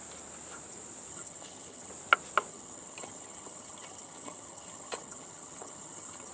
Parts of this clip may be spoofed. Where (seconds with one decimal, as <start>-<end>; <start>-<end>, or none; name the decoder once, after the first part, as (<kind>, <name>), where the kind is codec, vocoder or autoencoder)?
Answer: 1.1-1.9 (vocoder, HiFi-GAN); 2.5-6.3